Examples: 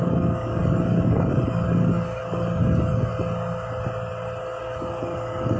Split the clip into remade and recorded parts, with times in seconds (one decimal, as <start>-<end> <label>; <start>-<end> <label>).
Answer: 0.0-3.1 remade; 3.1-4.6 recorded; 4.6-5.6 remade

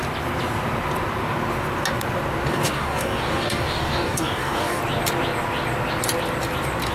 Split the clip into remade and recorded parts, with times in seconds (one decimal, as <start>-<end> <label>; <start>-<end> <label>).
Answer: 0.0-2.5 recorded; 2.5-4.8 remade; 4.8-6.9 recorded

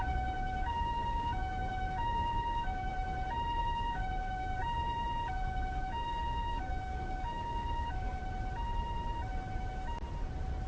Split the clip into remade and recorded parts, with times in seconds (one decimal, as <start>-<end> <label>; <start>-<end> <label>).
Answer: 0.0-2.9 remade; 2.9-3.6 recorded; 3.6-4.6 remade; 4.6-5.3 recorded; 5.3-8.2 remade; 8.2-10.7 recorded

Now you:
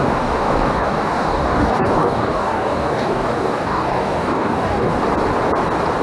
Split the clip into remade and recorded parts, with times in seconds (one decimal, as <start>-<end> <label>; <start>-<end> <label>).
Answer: 0.0-4.9 remade; 4.9-6.0 recorded